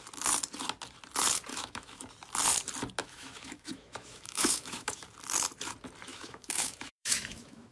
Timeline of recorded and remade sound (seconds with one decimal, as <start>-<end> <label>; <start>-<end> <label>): 0.0-1.5 recorded; 1.5-2.1 remade; 2.1-3.0 recorded; 3.0-5.0 remade; 5.0-6.1 recorded; 6.1-7.7 remade